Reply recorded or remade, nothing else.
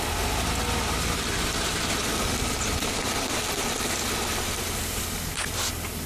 recorded